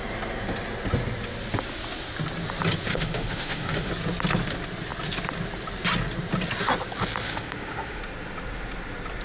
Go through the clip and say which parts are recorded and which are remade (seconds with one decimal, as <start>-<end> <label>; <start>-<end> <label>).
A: 0.0-2.9 recorded; 2.9-3.9 remade; 3.9-7.2 recorded; 7.2-8.0 remade; 8.0-9.2 recorded